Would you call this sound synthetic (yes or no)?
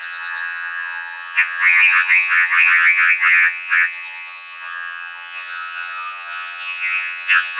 yes